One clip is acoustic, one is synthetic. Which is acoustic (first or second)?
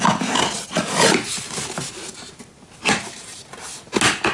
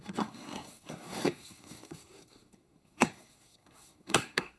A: first